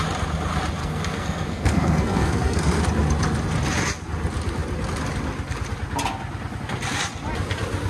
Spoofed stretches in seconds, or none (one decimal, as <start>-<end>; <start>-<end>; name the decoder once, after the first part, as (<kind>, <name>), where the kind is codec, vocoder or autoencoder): 0.8-2.8 (codec, SNAC)